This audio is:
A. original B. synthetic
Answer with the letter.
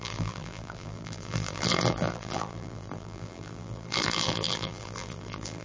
B